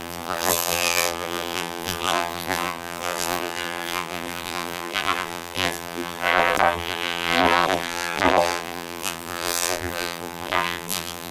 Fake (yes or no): yes